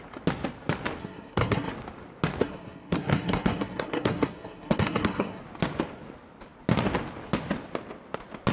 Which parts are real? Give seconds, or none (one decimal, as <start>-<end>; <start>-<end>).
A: 0.0-1.0; 1.7-2.4; 5.4-8.5